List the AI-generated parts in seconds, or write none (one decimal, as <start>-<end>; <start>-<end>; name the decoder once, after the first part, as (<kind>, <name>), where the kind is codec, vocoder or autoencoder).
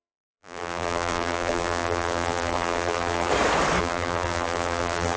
0.0-3.3 (vocoder, BigVGAN v2); 3.8-5.2